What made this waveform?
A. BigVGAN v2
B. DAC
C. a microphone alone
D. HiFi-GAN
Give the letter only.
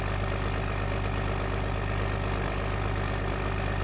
C